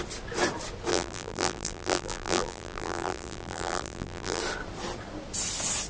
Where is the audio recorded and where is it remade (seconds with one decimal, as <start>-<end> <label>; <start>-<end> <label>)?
0.0-0.9 recorded; 0.9-4.4 remade; 4.4-5.9 recorded